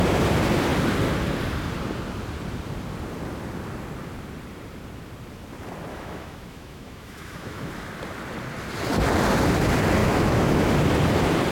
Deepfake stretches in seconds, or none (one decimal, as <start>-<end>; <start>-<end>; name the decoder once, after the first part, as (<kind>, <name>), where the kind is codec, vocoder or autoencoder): 5.9-7.7 (autoencoder, DAC-VAE); 10.0-10.7